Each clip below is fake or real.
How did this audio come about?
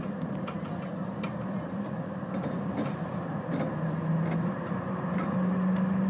real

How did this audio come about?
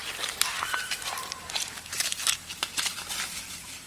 fake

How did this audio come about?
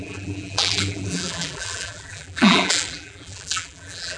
fake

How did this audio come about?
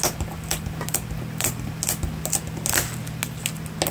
real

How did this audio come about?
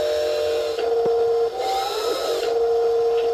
real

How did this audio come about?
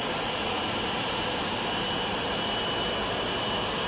fake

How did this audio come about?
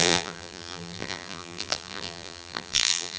fake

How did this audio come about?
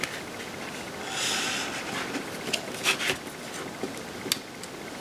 real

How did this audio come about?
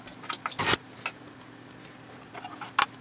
real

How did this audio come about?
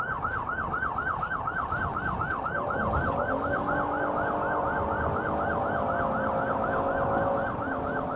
real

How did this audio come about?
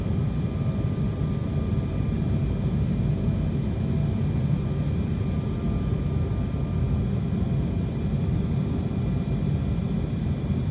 real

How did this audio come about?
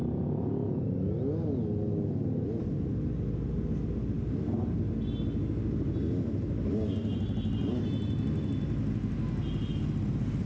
real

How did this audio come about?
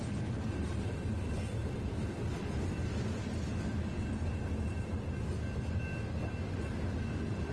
real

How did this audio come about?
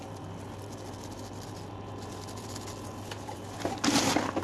real